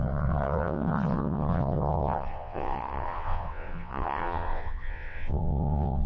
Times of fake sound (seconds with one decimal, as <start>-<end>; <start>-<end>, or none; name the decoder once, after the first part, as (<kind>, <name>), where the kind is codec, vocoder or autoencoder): 0.0-6.1 (vocoder, WaveNeXt)